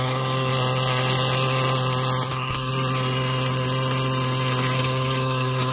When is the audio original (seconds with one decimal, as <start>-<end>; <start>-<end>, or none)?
0.5-2.3; 2.7-4.8